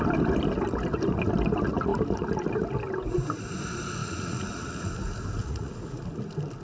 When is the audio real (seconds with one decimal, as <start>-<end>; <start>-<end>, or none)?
0.0-4.0; 4.9-5.4; 6.1-6.6